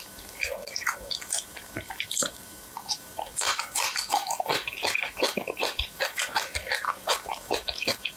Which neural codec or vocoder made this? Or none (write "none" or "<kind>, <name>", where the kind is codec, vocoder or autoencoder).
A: codec, DAC